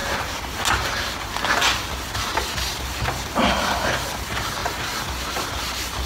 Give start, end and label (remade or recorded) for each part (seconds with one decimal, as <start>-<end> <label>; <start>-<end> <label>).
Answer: 0.0-6.1 recorded